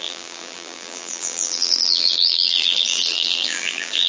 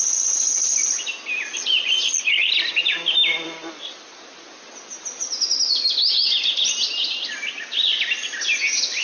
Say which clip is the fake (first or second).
first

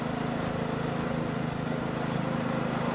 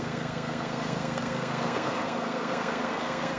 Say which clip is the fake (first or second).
second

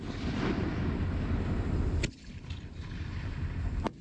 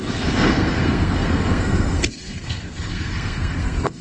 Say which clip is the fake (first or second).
second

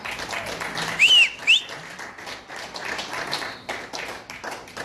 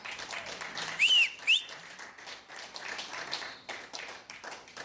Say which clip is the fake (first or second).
second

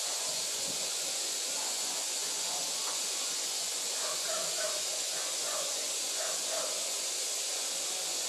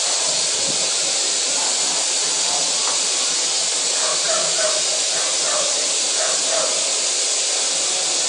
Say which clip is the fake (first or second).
first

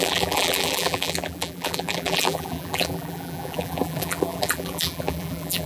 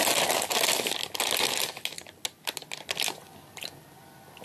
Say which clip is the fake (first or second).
first